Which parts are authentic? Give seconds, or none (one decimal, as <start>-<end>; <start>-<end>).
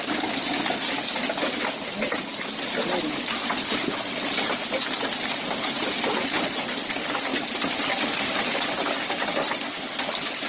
0.0-10.5